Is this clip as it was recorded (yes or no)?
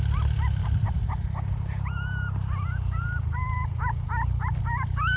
yes